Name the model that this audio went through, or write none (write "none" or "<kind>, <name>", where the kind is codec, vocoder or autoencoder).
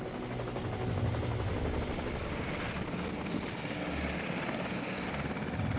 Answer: none